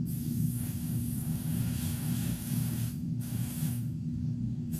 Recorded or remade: remade